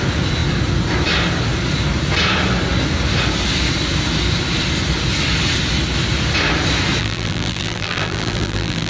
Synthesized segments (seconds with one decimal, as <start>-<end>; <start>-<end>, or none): 7.0-8.9